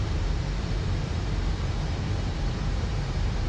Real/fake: fake